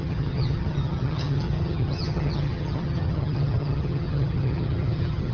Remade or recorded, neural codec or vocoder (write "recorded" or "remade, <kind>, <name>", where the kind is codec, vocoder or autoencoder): remade, vocoder, HiFi-GAN